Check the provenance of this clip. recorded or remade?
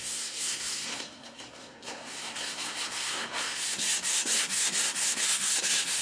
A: remade